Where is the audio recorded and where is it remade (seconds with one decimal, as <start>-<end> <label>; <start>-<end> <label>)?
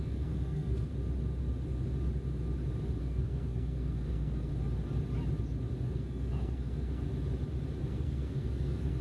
0.0-0.9 remade; 0.9-3.0 recorded; 3.0-4.5 remade; 4.5-5.9 recorded; 5.9-7.1 remade; 7.1-7.8 recorded; 7.8-9.0 remade